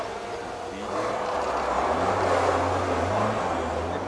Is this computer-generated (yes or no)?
no